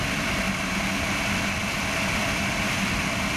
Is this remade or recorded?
recorded